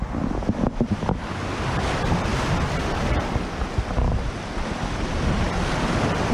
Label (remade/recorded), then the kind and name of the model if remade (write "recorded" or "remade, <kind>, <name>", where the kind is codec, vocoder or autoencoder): recorded